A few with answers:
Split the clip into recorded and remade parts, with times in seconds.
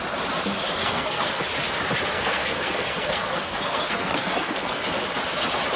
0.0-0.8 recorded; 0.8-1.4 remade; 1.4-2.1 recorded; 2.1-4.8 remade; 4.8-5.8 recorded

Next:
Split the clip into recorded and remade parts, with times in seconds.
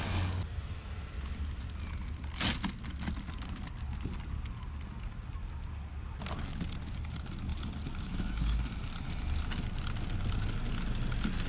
0.0-11.5 recorded